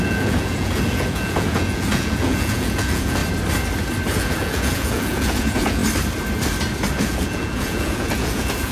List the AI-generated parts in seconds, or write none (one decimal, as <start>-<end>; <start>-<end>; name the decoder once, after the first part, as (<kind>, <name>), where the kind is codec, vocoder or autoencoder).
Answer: 0.0-3.2 (vocoder, Vocos); 4.1-5.8; 7.0-8.7